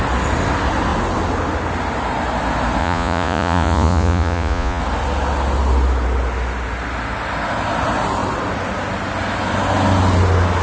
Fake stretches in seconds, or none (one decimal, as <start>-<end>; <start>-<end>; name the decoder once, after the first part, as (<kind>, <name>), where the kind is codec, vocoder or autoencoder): 2.8-4.8 (vocoder, Vocos)